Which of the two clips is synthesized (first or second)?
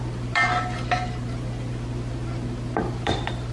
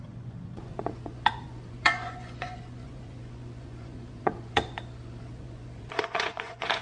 second